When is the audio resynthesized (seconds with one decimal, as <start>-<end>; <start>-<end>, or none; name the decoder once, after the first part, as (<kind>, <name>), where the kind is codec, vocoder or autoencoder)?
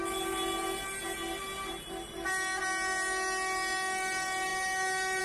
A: none